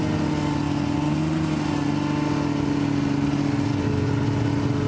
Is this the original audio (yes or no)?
yes